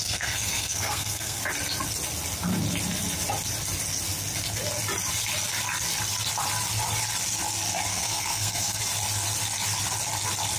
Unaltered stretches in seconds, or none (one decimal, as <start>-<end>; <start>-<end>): 1.4-7.9; 8.8-10.6